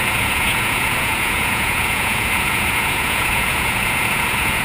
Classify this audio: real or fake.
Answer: fake